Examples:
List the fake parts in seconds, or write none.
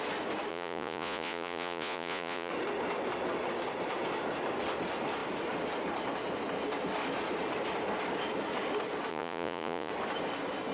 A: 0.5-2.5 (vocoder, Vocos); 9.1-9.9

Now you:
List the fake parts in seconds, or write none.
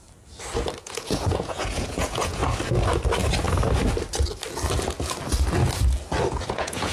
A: 0.8-2.4 (vocoder, Vocos); 6.5-6.9